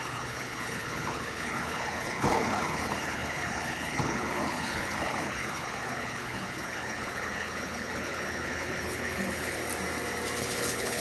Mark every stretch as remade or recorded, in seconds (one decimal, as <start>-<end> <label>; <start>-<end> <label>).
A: 0.0-9.6 remade; 9.6-10.4 recorded; 10.4-11.0 remade